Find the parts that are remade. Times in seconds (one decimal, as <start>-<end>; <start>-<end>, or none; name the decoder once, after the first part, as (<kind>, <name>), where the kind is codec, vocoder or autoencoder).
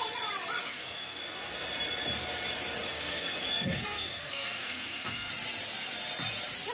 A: 0.6-1.2 (codec, SNAC); 2.9-5.3